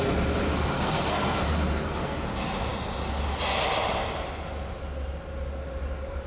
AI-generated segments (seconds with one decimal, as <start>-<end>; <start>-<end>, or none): 0.5-2.2